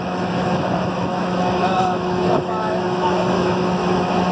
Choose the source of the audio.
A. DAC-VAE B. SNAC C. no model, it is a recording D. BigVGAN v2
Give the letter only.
A